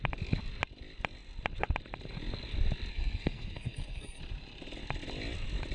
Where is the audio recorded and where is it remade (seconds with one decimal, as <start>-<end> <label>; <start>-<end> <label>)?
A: 0.0-2.9 recorded; 2.9-4.2 remade; 4.2-5.7 recorded